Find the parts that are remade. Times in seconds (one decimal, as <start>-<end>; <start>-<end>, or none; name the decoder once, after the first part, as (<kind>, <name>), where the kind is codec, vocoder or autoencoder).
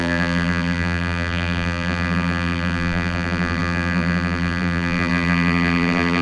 0.0-6.2 (vocoder, BigVGAN v2)